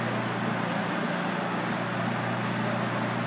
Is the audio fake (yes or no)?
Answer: no